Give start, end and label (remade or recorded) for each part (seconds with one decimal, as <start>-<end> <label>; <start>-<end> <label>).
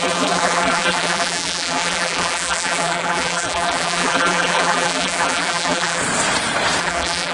0.0-6.0 remade; 6.0-6.8 recorded; 6.8-7.3 remade